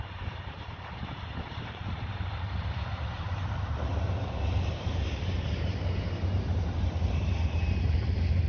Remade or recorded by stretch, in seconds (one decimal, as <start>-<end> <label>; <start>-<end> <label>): 0.0-3.9 remade; 3.9-4.7 recorded; 4.7-8.5 remade